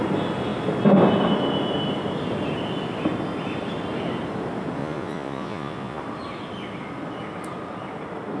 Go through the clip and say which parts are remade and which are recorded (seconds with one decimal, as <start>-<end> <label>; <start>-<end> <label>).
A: 0.0-4.8 recorded; 4.8-6.0 remade; 6.0-8.4 recorded